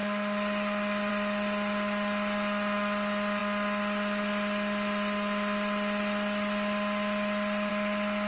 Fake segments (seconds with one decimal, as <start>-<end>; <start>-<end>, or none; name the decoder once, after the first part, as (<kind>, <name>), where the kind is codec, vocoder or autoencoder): none